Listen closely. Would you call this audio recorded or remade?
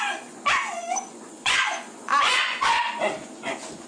remade